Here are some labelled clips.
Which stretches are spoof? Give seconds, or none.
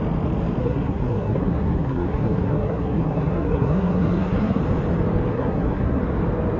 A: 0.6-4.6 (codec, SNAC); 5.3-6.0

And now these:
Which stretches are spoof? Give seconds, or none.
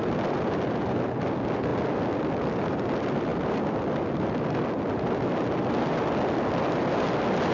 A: none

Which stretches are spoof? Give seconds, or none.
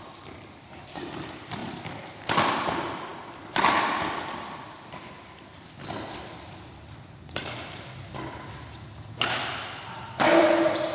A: 0.0-3.1 (vocoder, BigVGAN v2); 3.7-7.4; 9.7-10.9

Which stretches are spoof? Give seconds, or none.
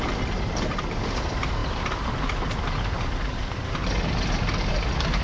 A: none